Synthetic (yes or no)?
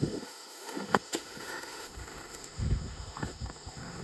yes